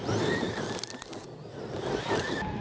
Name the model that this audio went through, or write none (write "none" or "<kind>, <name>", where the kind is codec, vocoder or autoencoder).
none